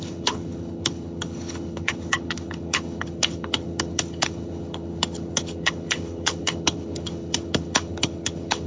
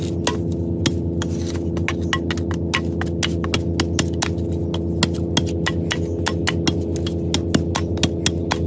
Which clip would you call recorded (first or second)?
second